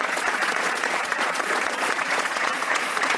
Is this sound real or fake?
fake